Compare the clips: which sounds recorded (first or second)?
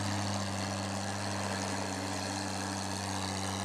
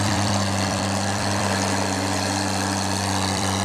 first